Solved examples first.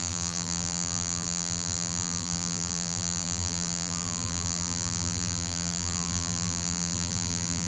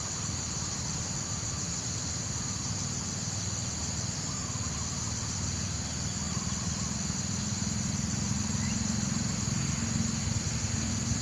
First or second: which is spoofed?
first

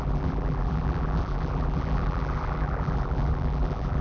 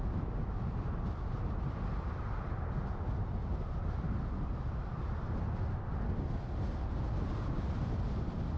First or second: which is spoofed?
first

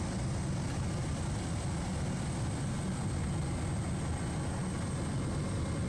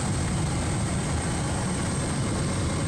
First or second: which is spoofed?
second